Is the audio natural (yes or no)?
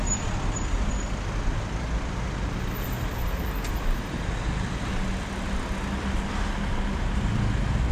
yes